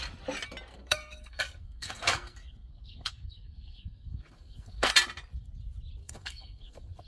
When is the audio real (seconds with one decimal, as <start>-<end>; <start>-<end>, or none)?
0.0-0.7; 4.9-6.0